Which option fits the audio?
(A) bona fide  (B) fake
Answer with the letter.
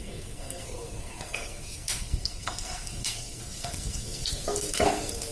B